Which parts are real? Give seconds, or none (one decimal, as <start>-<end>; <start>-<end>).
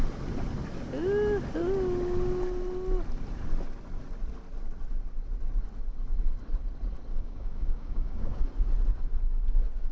0.0-7.1; 8.4-9.9